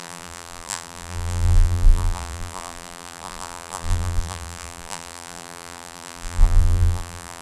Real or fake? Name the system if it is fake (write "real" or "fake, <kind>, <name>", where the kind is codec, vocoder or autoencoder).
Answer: fake, vocoder, BigVGAN v2